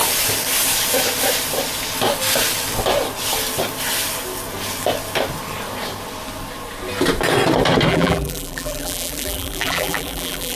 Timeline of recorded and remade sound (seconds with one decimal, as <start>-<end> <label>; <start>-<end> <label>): 0.0-7.9 recorded; 7.9-10.6 remade